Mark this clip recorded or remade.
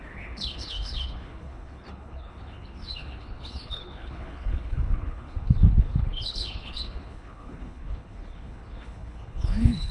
remade